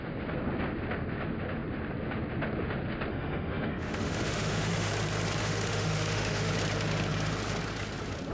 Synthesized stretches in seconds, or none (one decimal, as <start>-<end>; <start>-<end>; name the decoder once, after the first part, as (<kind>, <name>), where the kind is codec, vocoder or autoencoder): 3.1-4.9 (autoencoder, DAC-VAE); 5.4-6.5